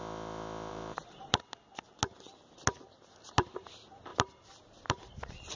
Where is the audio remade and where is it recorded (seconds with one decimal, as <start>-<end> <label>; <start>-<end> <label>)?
0.0-0.7 recorded; 0.7-1.4 remade; 1.4-4.1 recorded; 4.1-5.0 remade; 5.0-5.6 recorded